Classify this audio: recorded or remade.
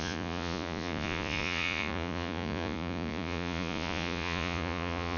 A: remade